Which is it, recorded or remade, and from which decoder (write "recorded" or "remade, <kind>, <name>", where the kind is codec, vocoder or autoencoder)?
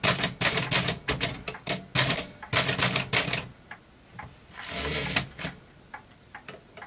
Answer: recorded